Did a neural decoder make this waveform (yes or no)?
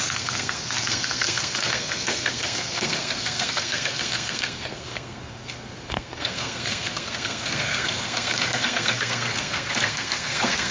yes